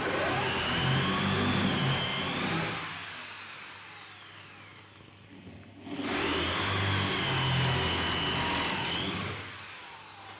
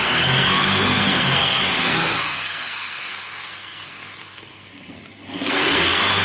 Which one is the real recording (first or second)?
first